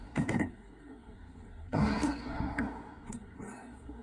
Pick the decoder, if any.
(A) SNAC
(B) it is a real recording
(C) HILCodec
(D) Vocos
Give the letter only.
A